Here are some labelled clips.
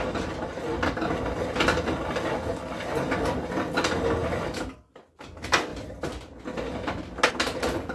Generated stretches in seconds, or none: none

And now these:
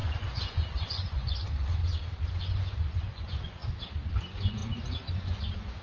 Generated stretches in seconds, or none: 0.0-1.8; 2.4-3.6; 4.1-4.6; 5.2-5.8

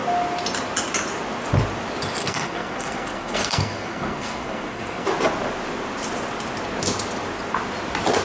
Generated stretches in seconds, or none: 2.2-5.1

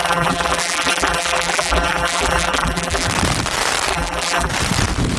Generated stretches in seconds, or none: 0.0-3.1; 3.9-4.5

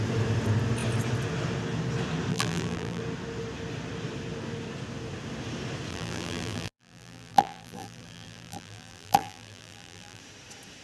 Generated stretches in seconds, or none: 2.3-3.0; 5.9-10.2